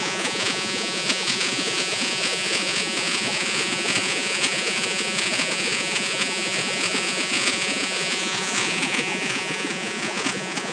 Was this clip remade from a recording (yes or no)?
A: yes